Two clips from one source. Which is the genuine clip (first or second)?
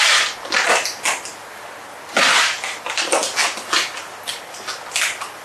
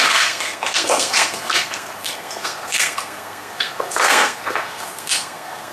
first